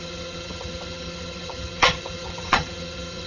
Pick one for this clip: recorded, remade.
remade